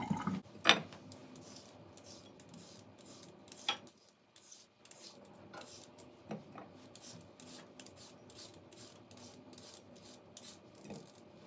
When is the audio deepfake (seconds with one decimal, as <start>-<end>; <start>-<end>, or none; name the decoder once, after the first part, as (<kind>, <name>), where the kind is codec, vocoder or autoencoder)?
none